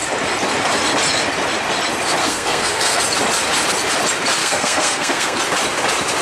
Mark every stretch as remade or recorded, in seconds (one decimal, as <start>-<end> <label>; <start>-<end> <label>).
0.0-2.2 recorded; 2.2-3.0 remade; 3.0-4.4 recorded; 4.4-5.4 remade; 5.4-6.2 recorded